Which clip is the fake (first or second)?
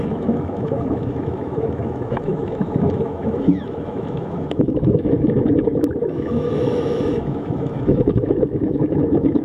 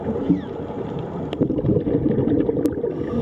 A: first